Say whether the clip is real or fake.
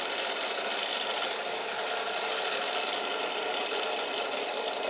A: real